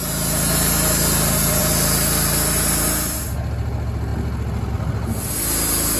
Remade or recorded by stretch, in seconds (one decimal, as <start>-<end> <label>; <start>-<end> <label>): 0.0-6.0 recorded

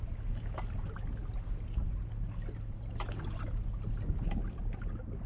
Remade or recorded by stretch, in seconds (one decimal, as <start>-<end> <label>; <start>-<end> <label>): 0.0-5.3 recorded

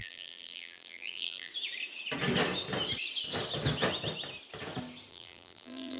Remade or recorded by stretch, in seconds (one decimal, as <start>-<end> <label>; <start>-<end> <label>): 0.0-1.5 remade; 1.5-5.1 recorded; 5.1-6.0 remade